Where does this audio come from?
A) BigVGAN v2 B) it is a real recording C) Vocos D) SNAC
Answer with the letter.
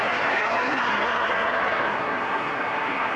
D